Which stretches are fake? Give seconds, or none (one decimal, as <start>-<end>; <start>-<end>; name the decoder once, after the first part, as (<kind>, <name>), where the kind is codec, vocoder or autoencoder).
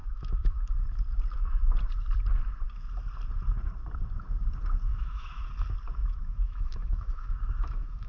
0.0-0.7 (autoencoder, DAC-VAE); 4.9-5.5; 6.0-8.1